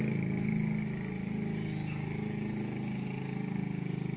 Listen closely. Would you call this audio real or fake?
real